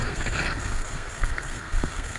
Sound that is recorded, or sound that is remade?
remade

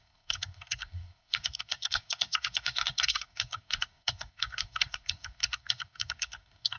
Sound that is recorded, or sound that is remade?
remade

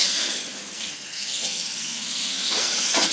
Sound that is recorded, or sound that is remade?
remade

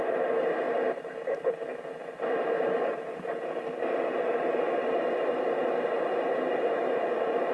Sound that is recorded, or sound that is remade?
recorded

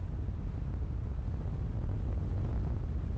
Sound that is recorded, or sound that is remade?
recorded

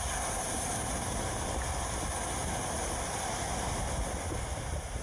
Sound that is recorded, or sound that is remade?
recorded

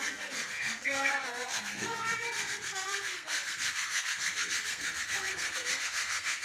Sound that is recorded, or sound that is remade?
remade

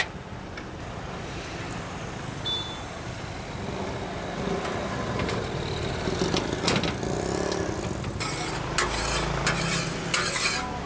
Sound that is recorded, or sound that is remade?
recorded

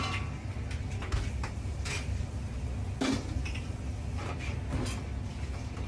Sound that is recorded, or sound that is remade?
recorded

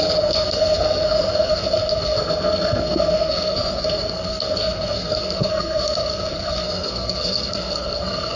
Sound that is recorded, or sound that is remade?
remade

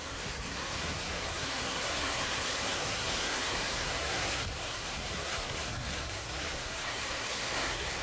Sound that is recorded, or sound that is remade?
remade